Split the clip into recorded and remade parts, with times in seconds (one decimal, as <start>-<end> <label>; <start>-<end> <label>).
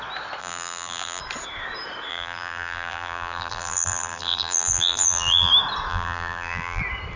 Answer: 0.0-0.4 recorded; 0.4-1.2 remade; 1.2-2.1 recorded; 2.1-5.5 remade; 5.5-5.9 recorded; 5.9-6.8 remade; 6.8-7.2 recorded